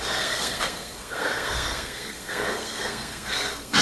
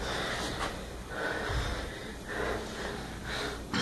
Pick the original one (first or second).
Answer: second